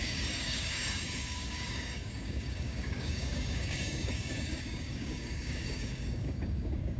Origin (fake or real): fake